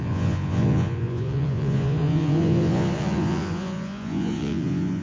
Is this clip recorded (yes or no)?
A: no